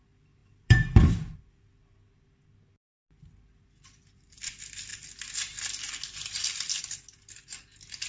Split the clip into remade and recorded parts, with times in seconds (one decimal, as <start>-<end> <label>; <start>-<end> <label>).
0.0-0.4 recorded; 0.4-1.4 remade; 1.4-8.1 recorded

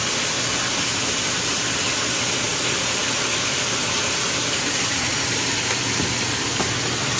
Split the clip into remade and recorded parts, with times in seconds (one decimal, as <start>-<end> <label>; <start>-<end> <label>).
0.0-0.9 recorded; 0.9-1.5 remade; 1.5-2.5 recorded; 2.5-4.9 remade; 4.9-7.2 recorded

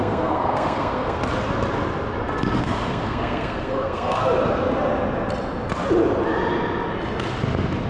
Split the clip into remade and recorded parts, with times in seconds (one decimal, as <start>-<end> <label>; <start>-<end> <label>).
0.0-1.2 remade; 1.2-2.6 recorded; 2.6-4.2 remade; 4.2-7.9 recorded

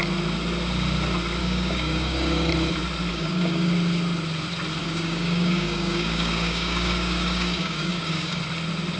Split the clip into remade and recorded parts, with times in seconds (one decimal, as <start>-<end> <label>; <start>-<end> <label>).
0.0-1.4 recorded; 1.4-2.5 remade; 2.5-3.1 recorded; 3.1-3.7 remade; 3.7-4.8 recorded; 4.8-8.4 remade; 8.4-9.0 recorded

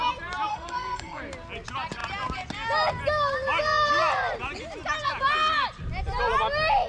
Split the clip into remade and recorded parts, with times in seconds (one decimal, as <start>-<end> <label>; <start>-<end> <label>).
0.0-0.5 recorded; 0.5-1.2 remade; 1.2-6.9 recorded

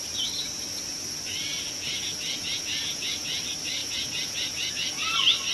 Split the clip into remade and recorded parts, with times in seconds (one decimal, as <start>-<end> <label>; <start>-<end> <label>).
0.0-1.5 recorded; 1.5-3.4 remade; 3.4-3.8 recorded; 3.8-4.7 remade; 4.7-5.5 recorded